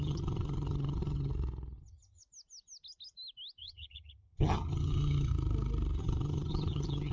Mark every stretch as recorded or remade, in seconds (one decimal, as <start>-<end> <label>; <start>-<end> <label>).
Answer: 0.0-1.3 remade; 1.3-1.8 recorded; 1.8-2.2 remade; 2.2-3.6 recorded; 3.6-5.3 remade; 5.3-6.0 recorded; 6.0-7.1 remade